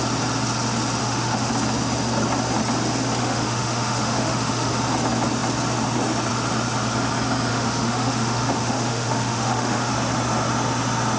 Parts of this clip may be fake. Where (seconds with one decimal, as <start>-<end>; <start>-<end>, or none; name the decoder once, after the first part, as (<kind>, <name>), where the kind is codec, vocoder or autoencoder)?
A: 1.0-1.5 (autoencoder, DAC-VAE); 3.2-4.7; 7.5-9.9

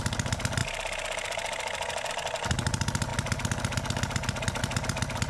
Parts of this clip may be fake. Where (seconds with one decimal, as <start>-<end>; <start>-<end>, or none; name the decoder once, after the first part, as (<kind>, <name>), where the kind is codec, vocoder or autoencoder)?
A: none